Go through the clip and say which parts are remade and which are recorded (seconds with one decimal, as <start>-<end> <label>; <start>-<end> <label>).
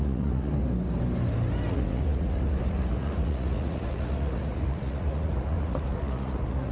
0.0-0.5 remade; 0.5-1.7 recorded; 1.7-6.7 remade